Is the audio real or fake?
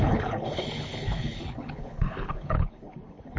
fake